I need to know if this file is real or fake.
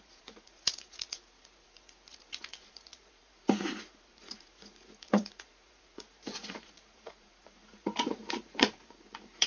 fake